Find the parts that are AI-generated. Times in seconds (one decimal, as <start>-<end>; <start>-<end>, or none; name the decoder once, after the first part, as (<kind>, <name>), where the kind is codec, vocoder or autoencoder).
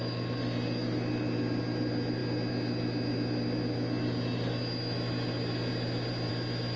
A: none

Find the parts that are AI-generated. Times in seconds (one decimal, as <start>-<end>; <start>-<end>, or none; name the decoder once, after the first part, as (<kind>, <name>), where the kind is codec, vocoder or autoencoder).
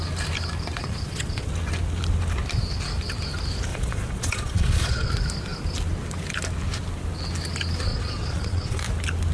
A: 0.8-1.5 (vocoder, Vocos); 3.7-5.1; 7.9-8.8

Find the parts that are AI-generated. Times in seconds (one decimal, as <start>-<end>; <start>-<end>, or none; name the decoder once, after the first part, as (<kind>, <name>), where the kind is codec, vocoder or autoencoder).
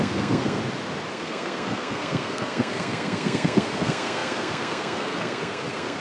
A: 0.0-0.6 (codec, SNAC); 1.1-6.0